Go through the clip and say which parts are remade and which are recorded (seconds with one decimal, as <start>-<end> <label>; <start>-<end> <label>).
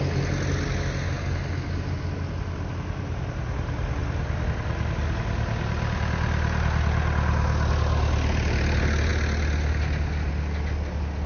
0.0-11.3 recorded